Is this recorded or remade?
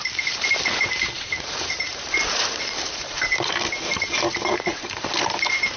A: remade